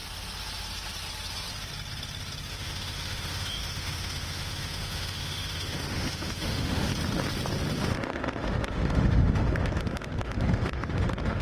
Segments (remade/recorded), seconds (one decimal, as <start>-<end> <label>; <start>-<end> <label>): 0.0-2.5 recorded; 2.5-6.9 remade; 6.9-7.8 recorded; 7.8-11.4 remade